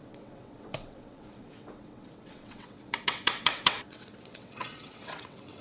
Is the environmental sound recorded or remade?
remade